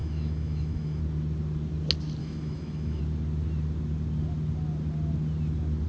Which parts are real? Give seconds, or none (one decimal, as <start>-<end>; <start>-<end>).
1.0-2.2; 3.0-5.9